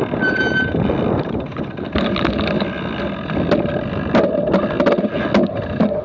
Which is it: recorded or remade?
recorded